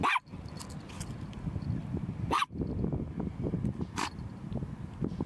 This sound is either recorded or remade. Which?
recorded